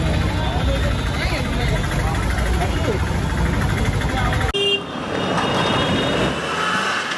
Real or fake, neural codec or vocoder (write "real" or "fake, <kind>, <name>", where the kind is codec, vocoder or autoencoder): real